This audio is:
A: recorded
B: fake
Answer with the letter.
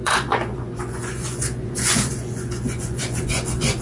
B